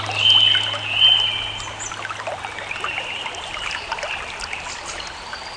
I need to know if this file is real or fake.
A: real